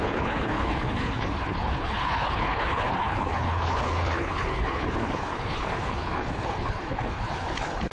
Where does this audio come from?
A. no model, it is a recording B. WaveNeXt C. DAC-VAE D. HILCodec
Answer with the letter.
D